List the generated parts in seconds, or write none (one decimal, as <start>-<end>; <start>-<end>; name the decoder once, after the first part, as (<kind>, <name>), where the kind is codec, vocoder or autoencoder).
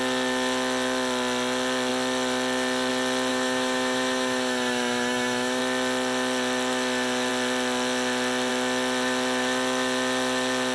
3.3-5.6 (autoencoder, DAC-VAE)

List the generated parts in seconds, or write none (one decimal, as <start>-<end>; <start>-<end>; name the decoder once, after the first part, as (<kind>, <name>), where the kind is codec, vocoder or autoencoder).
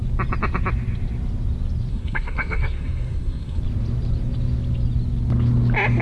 1.9-3.6 (codec, SNAC)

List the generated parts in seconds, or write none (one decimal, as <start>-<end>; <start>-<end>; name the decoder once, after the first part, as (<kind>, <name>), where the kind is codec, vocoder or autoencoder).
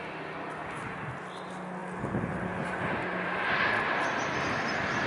none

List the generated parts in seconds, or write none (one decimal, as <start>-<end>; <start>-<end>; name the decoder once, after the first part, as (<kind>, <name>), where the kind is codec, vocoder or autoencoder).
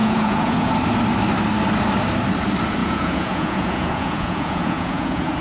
0.0-0.7 (vocoder, Vocos); 2.8-5.4